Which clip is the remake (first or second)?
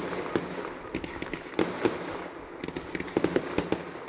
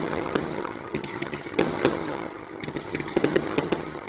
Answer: second